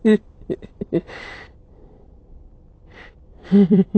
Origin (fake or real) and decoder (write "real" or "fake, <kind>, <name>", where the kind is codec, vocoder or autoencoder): fake, vocoder, BigVGAN v2